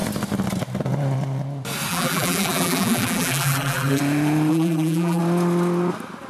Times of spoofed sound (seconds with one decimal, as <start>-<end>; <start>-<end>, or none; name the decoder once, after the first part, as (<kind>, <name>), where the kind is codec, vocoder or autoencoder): 1.9-4.0 (vocoder, BigVGAN v2); 4.5-5.2

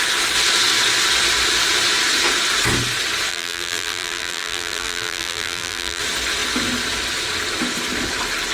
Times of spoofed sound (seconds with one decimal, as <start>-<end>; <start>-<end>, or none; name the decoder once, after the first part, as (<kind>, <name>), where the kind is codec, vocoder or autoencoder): 3.3-6.0 (vocoder, BigVGAN v2)

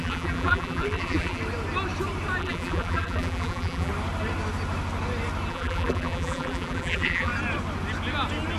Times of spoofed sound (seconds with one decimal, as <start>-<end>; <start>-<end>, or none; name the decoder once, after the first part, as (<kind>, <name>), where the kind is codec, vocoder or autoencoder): 0.0-1.4 (vocoder, BigVGAN v2); 2.4-3.9; 5.5-7.3

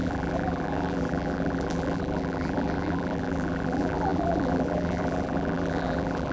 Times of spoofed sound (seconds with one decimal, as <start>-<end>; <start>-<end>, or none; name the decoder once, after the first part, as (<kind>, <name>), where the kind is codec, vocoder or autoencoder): 0.0-6.3 (vocoder, BigVGAN v2)

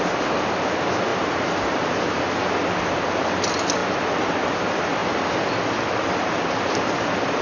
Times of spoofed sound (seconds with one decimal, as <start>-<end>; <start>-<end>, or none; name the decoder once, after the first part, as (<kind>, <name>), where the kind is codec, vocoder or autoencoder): 1.1-2.2 (vocoder, BigVGAN v2)

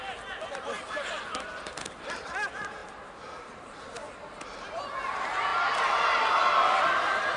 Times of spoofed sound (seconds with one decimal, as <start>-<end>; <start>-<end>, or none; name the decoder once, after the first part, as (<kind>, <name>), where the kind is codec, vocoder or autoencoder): none

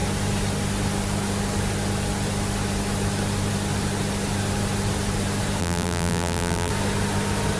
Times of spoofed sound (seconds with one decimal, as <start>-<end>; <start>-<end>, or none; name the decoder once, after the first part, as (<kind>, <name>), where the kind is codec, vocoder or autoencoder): 5.6-6.7 (vocoder, BigVGAN v2)

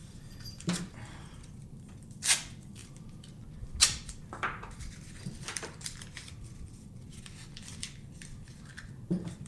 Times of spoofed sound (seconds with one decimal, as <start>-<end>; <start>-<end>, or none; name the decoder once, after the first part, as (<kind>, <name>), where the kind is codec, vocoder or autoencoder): 0.0-2.8 (vocoder, BigVGAN v2); 3.8-9.5